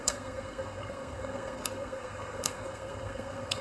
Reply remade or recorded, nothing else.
remade